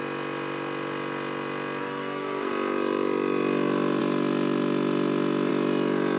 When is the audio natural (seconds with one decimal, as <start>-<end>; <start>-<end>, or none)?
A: 0.0-1.8; 2.5-6.2